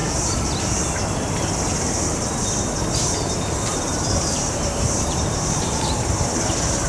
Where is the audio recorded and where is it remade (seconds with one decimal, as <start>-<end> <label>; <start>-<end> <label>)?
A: 0.0-3.7 recorded; 3.7-6.9 remade